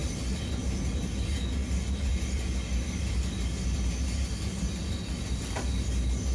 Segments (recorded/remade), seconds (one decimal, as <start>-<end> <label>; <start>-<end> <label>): 0.0-6.3 recorded